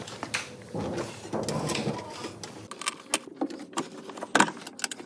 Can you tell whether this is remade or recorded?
recorded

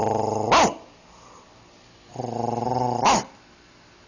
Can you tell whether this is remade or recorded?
recorded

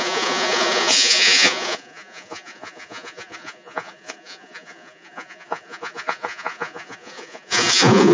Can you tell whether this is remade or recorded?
remade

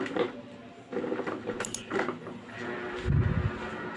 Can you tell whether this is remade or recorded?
recorded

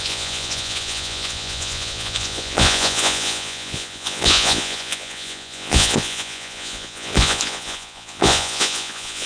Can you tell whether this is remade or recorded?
remade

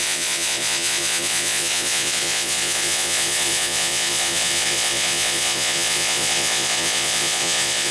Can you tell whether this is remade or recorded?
remade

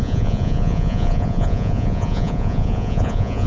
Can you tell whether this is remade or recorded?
remade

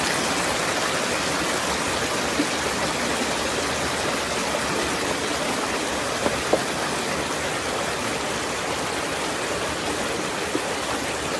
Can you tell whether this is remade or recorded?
recorded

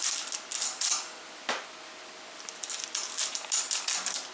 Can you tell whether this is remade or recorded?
recorded